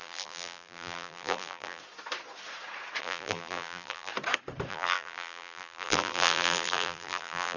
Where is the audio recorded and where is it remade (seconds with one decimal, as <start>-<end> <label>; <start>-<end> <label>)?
0.0-1.8 remade; 1.8-3.0 recorded; 3.0-4.1 remade; 4.1-4.7 recorded; 4.7-7.6 remade